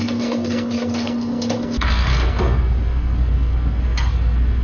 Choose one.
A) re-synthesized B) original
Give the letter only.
A